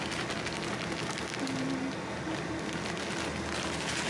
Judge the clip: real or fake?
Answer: real